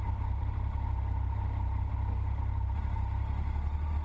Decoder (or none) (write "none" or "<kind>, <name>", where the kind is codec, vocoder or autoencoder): none